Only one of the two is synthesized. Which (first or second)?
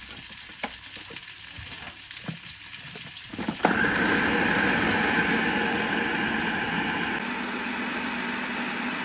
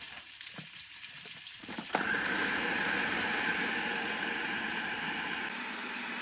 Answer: second